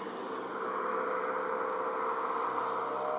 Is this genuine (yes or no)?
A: yes